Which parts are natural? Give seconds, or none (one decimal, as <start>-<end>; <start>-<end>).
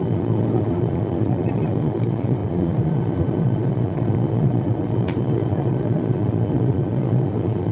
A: none